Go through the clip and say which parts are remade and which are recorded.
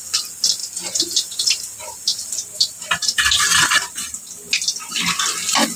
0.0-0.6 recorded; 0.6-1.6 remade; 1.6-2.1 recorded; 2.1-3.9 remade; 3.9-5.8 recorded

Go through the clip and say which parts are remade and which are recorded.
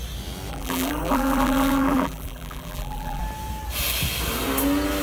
0.0-0.5 recorded; 0.5-3.2 remade; 3.2-5.0 recorded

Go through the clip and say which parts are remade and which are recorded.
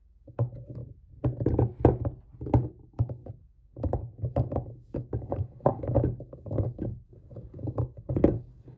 0.0-0.8 remade; 0.8-2.6 recorded; 2.6-8.8 remade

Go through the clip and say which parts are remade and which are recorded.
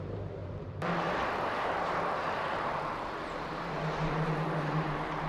0.0-5.3 remade